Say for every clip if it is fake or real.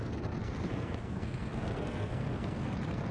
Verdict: fake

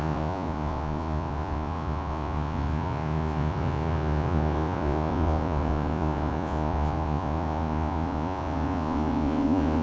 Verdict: fake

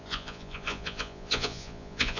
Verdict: fake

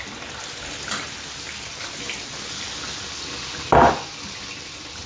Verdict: real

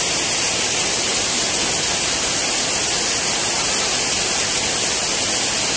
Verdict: real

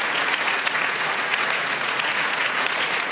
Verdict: fake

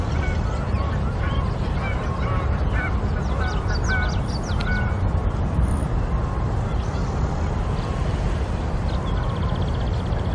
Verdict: real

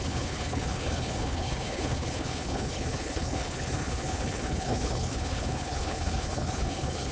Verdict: fake